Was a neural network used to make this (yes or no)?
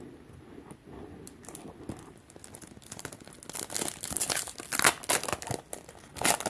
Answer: no